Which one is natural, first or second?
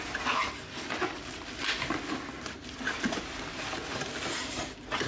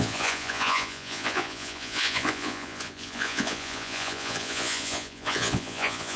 first